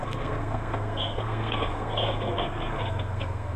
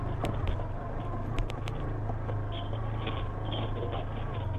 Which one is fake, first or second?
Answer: first